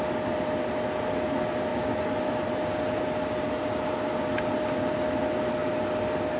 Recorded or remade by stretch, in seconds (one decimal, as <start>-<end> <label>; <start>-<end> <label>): 0.0-6.4 recorded